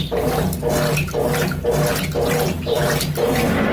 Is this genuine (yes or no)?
yes